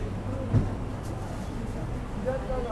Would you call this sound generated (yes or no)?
no